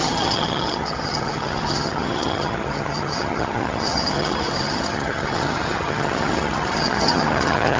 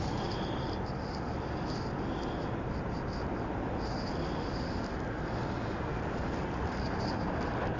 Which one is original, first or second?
second